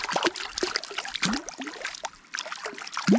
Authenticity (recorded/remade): recorded